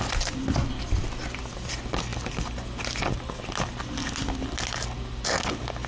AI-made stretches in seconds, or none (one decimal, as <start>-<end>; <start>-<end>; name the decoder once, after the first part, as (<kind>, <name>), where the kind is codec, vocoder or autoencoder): none